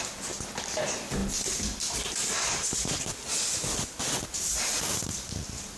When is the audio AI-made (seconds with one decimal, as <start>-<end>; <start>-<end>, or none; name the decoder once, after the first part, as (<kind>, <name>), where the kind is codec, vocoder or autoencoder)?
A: none